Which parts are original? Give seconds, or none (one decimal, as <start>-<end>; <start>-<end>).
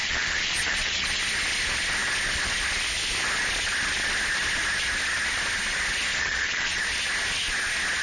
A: 1.2-6.1; 6.8-8.0